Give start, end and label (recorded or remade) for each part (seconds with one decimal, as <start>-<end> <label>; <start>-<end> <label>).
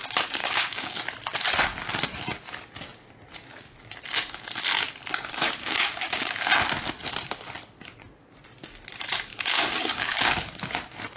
0.0-0.4 recorded; 0.4-1.0 remade; 1.0-5.6 recorded; 5.6-6.5 remade; 6.5-9.3 recorded; 9.3-10.3 remade; 10.3-11.2 recorded